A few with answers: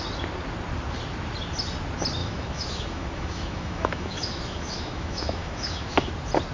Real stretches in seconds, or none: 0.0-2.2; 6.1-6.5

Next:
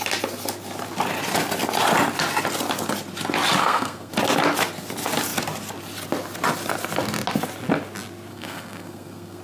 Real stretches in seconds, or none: 0.0-3.6; 4.1-8.3

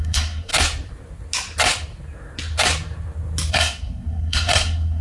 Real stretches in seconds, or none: 0.5-3.5

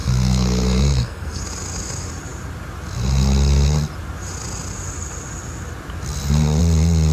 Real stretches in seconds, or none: 1.4-7.1